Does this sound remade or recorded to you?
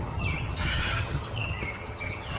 remade